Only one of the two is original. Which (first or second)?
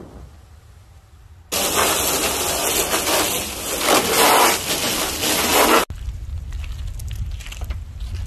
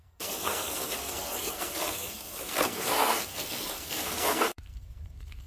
first